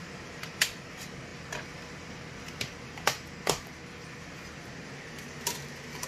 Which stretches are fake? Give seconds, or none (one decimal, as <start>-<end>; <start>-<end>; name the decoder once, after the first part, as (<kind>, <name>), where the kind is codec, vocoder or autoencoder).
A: none